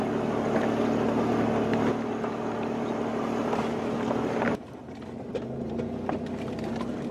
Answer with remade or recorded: recorded